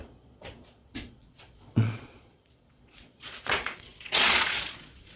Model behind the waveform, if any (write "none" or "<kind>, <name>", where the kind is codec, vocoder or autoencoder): vocoder, Vocos